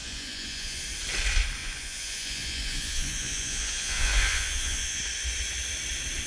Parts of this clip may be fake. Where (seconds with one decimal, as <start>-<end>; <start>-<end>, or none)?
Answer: 0.0-0.8; 1.6-5.0